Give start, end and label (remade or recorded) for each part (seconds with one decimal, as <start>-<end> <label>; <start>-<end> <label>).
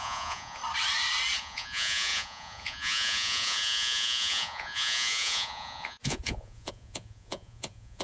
0.0-0.6 remade; 0.6-1.4 recorded; 1.4-8.0 remade